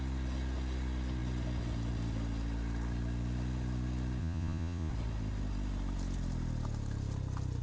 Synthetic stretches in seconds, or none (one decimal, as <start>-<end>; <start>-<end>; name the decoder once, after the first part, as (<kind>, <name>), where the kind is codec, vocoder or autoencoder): 4.2-4.9 (vocoder, Vocos)